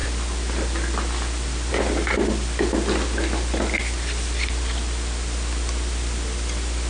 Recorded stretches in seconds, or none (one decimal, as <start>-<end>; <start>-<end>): 0.0-6.9